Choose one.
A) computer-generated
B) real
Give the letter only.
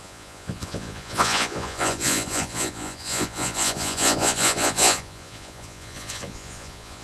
A